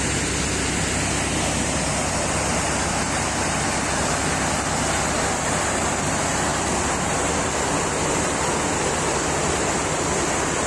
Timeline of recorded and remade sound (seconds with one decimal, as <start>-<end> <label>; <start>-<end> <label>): 0.0-10.7 recorded